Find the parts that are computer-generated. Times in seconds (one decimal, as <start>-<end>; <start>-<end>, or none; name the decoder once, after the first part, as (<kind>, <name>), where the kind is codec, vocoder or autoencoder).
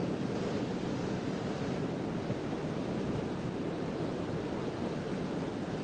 1.1-4.8 (vocoder, BigVGAN v2)